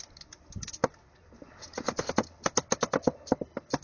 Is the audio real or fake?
real